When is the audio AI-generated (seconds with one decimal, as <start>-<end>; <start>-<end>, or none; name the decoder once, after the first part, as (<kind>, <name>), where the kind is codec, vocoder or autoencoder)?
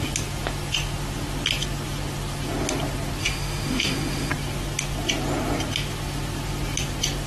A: 3.2-4.3 (autoencoder, DAC-VAE)